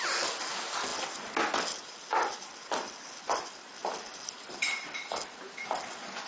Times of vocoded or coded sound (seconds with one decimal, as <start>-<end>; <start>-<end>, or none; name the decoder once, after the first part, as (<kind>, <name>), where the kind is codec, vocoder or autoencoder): none